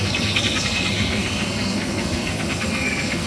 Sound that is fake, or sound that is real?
fake